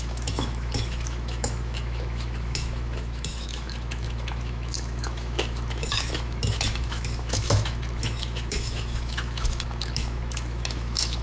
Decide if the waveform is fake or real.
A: fake